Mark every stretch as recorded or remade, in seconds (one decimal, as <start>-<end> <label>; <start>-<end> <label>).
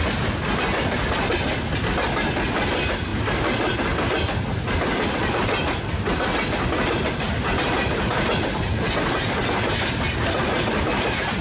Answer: 0.0-11.4 recorded